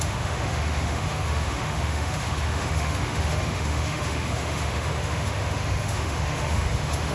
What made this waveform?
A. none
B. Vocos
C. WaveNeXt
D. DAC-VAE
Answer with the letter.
D